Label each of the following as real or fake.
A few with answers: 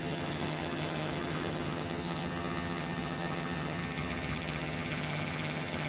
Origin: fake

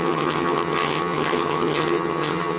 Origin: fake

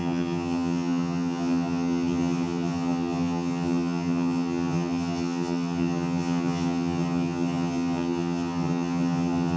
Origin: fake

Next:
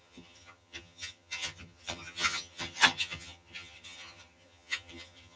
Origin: fake